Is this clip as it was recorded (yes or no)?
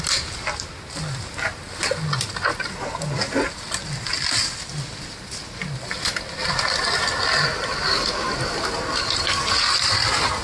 yes